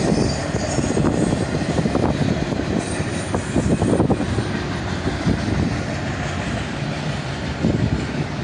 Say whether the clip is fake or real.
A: fake